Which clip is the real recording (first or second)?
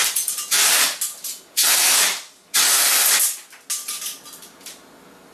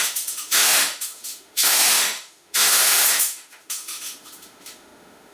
first